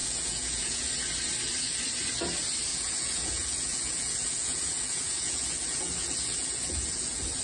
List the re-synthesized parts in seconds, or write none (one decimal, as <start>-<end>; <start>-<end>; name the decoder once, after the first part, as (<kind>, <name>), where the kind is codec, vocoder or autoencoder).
0.0-0.9 (vocoder, Vocos); 2.7-7.4